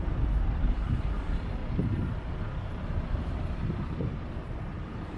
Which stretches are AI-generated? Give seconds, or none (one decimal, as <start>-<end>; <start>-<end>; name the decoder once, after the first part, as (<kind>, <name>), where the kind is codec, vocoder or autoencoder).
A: 0.0-1.6 (vocoder, BigVGAN v2); 2.1-5.2